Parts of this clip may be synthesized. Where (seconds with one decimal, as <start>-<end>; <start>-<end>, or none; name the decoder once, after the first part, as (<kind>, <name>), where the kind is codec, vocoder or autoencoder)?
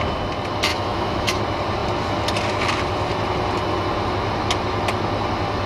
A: 0.7-1.4 (autoencoder, DAC-VAE)